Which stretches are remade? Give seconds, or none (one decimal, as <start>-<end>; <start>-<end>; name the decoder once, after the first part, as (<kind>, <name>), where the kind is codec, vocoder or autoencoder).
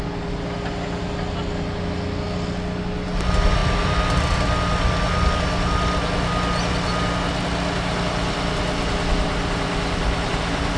none